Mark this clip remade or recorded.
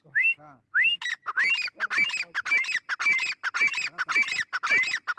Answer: recorded